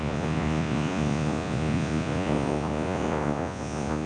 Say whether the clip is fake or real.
fake